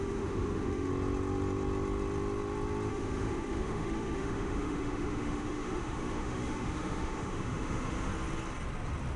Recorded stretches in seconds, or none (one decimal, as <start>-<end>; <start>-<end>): 0.9-2.9; 8.1-9.2